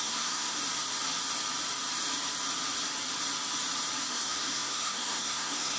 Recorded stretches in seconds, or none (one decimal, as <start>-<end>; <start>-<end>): 0.6-4.1